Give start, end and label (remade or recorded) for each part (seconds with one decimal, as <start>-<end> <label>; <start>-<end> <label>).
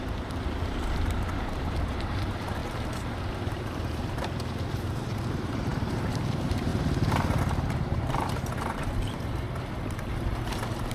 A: 0.0-2.6 remade; 2.6-3.3 recorded; 3.3-10.9 remade